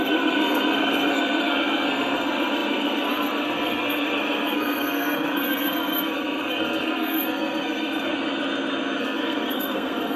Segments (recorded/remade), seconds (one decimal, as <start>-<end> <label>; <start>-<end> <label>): 0.0-8.1 remade; 8.1-9.0 recorded; 9.0-10.2 remade